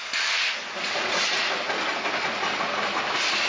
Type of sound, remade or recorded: recorded